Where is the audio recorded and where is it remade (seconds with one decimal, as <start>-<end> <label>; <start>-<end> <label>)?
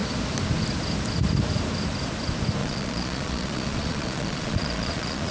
0.0-2.6 recorded; 2.6-5.3 remade